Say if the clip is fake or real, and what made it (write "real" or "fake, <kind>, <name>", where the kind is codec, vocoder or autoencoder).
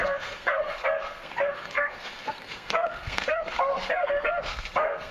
fake, codec, SNAC